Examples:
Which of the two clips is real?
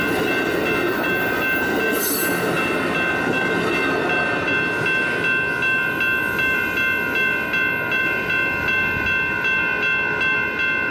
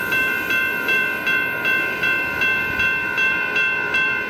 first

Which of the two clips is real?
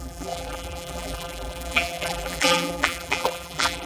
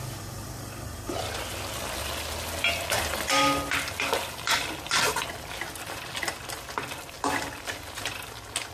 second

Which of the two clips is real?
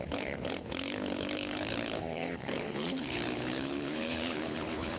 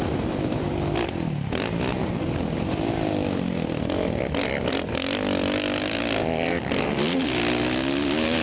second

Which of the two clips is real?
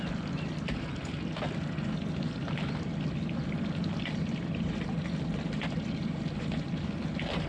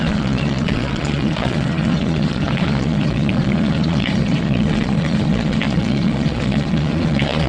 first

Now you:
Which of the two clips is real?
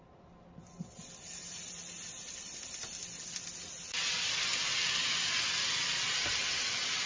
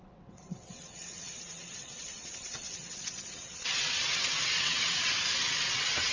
first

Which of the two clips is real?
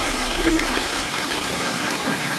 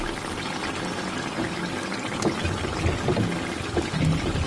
second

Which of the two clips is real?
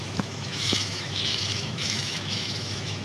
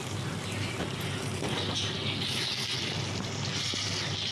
second